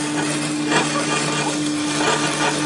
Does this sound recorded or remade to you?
recorded